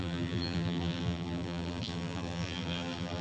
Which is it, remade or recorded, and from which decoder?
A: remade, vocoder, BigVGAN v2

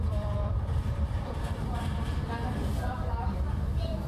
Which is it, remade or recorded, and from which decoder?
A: remade, vocoder, BigVGAN v2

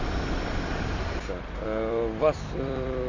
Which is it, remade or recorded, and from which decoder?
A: remade, vocoder, BigVGAN v2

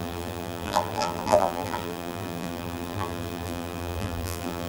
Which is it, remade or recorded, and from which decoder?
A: remade, vocoder, BigVGAN v2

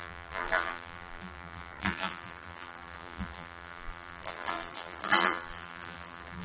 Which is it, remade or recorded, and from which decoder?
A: remade, vocoder, BigVGAN v2